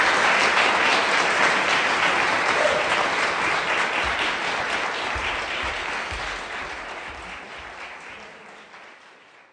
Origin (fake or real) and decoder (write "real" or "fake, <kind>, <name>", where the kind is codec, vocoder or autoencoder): real